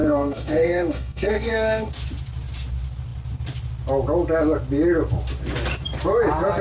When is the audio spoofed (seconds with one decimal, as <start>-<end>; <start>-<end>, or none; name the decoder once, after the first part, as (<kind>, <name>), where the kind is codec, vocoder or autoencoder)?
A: 0.0-1.9 (codec, SNAC)